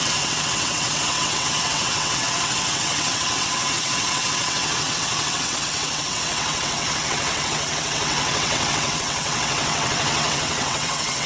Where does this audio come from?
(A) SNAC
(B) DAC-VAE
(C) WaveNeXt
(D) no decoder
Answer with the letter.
C